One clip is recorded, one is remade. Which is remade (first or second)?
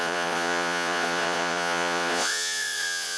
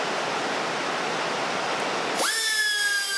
first